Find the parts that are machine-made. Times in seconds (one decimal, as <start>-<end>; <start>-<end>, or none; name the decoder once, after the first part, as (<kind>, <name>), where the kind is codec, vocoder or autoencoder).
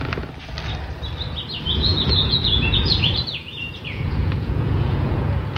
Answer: 1.9-5.6 (vocoder, Vocos)